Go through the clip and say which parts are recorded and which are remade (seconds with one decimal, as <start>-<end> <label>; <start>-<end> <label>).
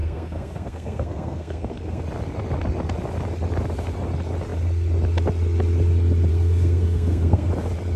0.0-2.0 remade; 2.0-6.3 recorded; 6.3-7.5 remade; 7.5-8.0 recorded